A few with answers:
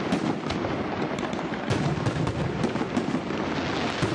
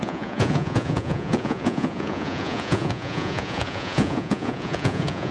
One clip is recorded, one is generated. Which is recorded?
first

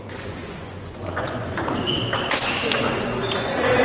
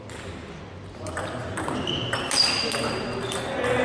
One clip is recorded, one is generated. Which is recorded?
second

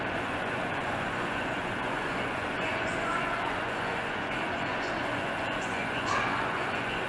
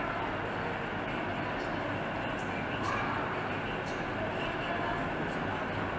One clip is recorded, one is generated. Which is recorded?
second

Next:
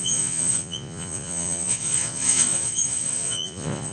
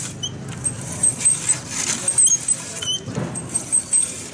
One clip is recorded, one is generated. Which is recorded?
second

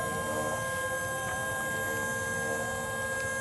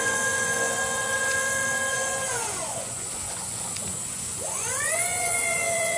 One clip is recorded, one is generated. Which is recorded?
first